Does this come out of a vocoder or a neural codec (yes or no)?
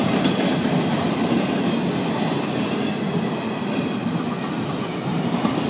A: no